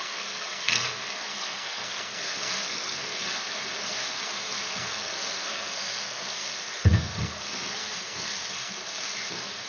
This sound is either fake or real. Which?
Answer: fake